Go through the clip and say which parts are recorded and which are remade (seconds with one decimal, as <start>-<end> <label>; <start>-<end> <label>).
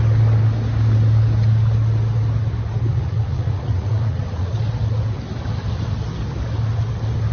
0.0-2.9 recorded; 2.9-4.5 remade; 4.5-7.3 recorded